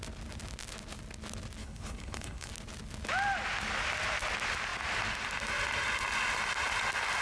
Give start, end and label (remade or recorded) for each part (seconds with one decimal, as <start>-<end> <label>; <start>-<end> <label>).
0.0-1.6 recorded; 1.6-2.5 remade; 2.5-7.2 recorded